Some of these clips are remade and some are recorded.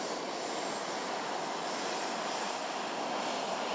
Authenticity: recorded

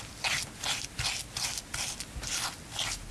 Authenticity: recorded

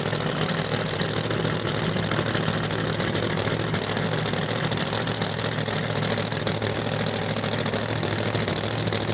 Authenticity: recorded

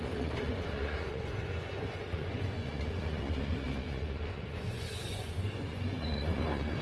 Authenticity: remade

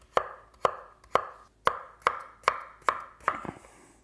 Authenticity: recorded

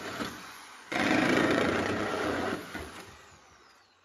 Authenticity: remade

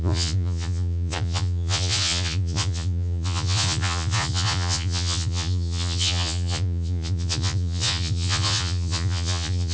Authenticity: remade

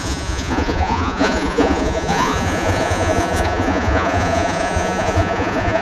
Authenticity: remade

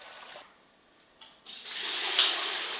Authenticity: recorded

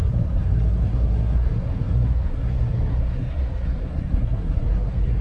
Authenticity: remade